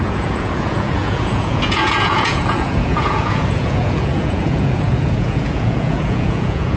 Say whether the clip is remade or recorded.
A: remade